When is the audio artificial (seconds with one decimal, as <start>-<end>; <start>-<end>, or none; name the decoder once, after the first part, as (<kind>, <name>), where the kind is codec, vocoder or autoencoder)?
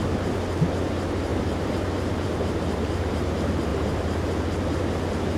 1.3-3.3 (vocoder, BigVGAN v2); 3.7-4.3